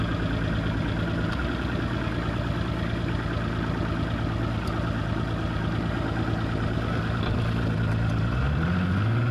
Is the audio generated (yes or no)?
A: no